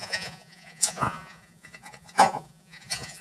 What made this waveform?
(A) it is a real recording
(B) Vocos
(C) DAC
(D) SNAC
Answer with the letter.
B